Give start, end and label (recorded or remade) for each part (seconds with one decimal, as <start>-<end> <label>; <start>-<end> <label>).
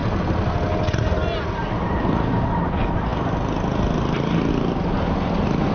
0.0-5.7 recorded